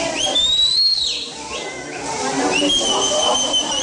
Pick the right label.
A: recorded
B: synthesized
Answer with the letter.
A